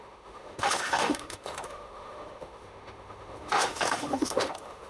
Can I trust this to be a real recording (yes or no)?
no